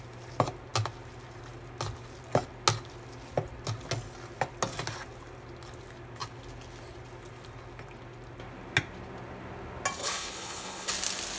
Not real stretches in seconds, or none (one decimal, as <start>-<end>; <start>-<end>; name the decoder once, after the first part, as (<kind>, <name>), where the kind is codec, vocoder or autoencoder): 10.0-10.9 (codec, HILCodec)